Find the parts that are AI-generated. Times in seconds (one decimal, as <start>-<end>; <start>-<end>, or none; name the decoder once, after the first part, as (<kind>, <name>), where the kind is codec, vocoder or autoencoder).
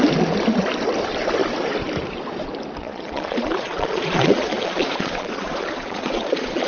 2.8-6.7 (vocoder, Vocos)